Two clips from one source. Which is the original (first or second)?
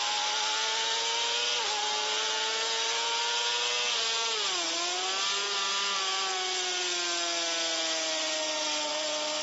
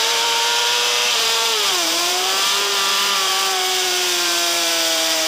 first